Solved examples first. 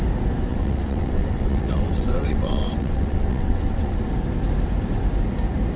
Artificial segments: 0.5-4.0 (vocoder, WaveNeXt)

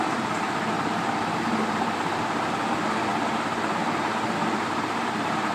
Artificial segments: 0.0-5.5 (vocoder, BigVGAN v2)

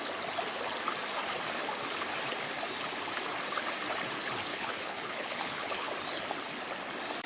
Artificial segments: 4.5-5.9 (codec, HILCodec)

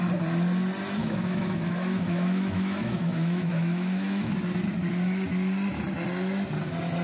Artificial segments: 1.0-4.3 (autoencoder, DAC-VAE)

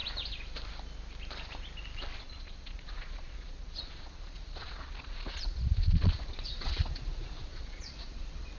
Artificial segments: 2.2-8.6 (vocoder, Vocos)

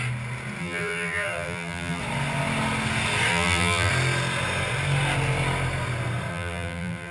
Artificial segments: 0.6-2.0 (vocoder, BigVGAN v2); 3.3-3.9; 6.3-7.1